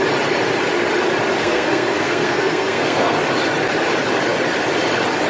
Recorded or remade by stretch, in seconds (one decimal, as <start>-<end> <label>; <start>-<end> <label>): 0.0-1.4 recorded; 1.4-3.2 remade; 3.2-5.3 recorded